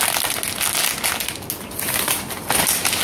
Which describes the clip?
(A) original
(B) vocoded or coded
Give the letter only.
A